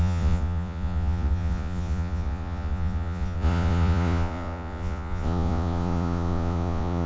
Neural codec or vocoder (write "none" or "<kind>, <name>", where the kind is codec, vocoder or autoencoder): vocoder, Vocos